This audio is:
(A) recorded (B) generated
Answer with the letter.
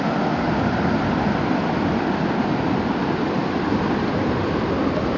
A